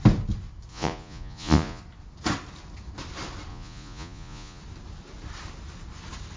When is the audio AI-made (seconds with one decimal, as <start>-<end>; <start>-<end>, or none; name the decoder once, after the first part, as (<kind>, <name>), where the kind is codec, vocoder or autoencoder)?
0.7-1.8 (vocoder, Vocos); 3.5-4.6